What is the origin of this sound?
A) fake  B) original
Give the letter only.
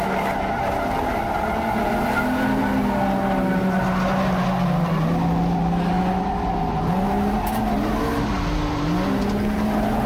B